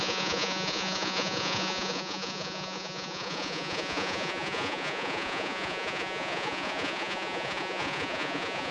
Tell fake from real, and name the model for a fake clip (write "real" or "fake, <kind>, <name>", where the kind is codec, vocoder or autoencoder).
fake, vocoder, Vocos